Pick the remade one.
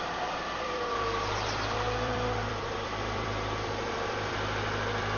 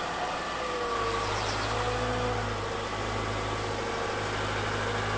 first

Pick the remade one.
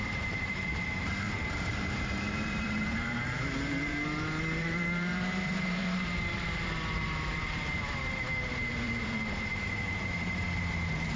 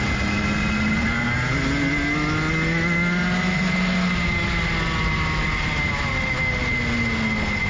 first